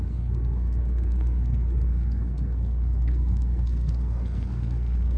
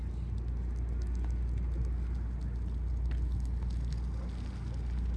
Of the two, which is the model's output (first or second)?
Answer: first